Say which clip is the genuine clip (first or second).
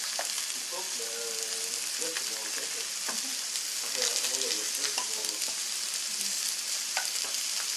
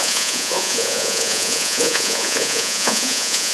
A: first